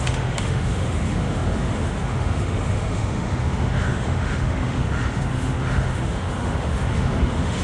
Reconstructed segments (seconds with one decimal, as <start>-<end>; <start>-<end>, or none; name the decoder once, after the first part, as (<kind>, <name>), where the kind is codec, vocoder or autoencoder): 0.0-7.6 (autoencoder, DAC-VAE)